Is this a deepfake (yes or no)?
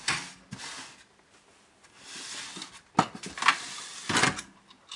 no